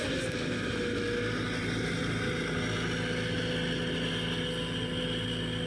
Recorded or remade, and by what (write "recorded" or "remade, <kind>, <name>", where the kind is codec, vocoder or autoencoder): recorded